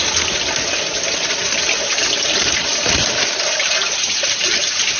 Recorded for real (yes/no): yes